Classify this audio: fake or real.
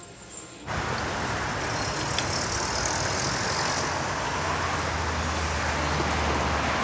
real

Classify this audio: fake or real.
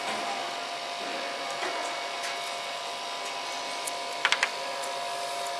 real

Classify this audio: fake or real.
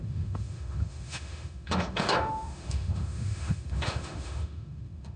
fake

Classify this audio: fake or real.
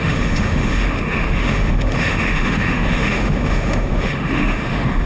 fake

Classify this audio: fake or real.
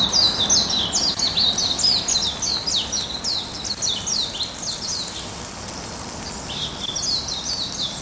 real